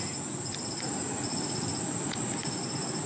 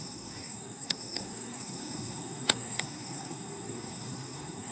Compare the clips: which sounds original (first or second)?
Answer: first